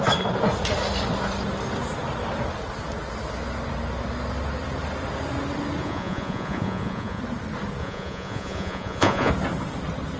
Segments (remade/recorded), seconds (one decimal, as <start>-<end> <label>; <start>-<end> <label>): 0.0-5.8 recorded; 5.8-7.2 remade; 7.2-7.8 recorded; 7.8-9.3 remade; 9.3-10.2 recorded